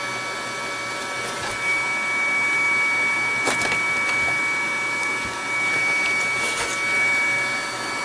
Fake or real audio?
real